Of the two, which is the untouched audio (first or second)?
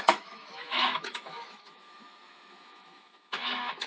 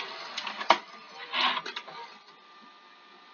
second